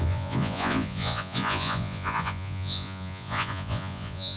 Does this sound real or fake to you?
fake